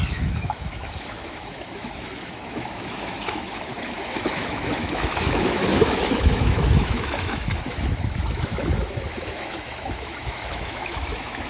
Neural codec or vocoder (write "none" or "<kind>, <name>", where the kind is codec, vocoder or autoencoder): autoencoder, DAC-VAE